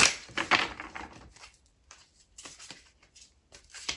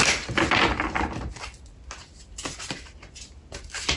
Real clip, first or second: second